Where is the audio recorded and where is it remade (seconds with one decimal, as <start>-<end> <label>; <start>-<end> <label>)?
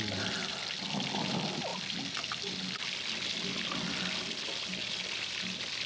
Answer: 0.0-5.9 recorded